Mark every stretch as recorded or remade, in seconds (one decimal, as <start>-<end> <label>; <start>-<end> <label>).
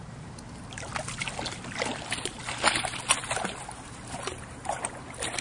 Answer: 0.0-0.9 remade; 0.9-1.9 recorded; 1.9-2.4 remade; 2.4-3.6 recorded; 3.6-5.4 remade